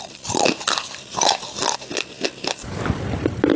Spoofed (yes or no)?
no